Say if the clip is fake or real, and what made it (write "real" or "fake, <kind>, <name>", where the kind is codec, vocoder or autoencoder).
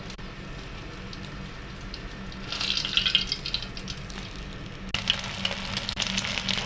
real